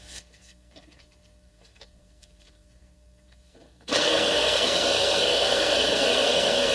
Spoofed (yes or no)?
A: yes